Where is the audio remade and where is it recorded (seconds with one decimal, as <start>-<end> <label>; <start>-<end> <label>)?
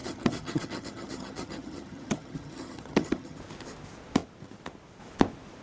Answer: 0.0-3.4 remade; 3.4-5.6 recorded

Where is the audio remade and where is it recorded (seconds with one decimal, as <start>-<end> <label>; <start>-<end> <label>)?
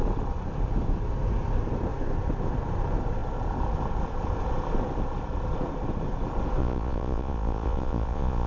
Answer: 0.0-6.6 recorded; 6.6-8.5 remade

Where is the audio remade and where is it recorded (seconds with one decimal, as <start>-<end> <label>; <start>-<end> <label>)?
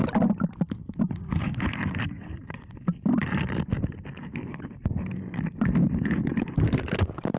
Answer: 0.0-6.3 recorded; 6.3-6.8 remade; 6.8-7.4 recorded